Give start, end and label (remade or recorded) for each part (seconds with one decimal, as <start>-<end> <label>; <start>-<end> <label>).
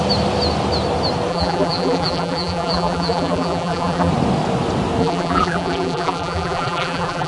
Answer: 0.0-1.3 recorded; 1.3-4.1 remade; 4.1-5.0 recorded; 5.0-7.3 remade